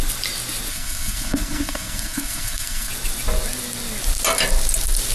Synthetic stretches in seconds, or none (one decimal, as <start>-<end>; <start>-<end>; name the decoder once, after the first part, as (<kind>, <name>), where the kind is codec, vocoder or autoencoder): 0.7-2.9 (codec, SNAC)

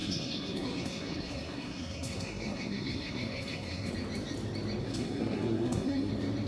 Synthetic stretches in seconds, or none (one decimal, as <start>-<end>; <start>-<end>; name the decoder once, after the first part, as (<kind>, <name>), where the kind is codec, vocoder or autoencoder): 0.0-3.9 (codec, SNAC); 4.8-6.1

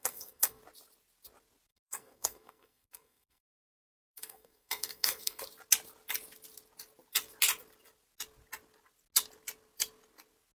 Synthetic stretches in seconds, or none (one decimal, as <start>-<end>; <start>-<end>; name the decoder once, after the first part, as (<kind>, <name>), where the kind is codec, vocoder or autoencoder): 0.0-0.6 (codec, SNAC); 1.7-5.4

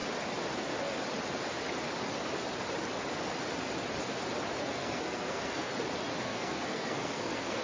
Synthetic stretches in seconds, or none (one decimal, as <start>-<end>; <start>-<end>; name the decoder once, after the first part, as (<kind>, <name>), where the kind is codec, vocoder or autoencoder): 4.6-5.7 (codec, SNAC); 6.2-7.6

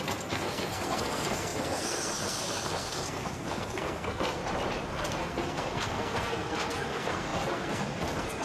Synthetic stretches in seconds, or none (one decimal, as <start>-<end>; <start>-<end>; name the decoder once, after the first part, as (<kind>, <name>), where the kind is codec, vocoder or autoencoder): 0.0-4.4 (codec, SNAC); 4.9-8.4

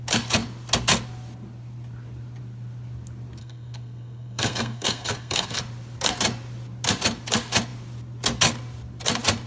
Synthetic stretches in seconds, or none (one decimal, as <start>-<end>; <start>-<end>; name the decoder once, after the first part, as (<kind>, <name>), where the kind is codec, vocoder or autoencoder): 3.4-5.6 (codec, SNAC)

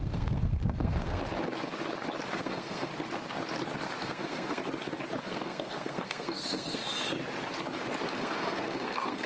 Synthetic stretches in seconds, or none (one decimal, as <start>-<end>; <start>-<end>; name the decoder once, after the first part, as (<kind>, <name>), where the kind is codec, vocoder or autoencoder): 0.0-1.2 (codec, SNAC); 2.3-2.9; 4.0-4.6; 5.2-6.8; 8.2-9.3

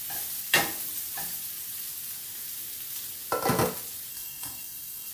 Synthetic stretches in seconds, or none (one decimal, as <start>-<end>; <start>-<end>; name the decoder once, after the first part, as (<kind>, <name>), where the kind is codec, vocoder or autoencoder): 4.1-5.1 (codec, SNAC)